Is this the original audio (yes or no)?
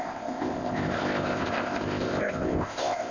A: no